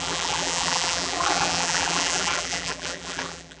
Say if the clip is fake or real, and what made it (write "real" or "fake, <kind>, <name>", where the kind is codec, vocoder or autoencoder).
fake, vocoder, BigVGAN v2